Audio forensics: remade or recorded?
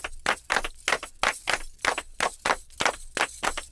recorded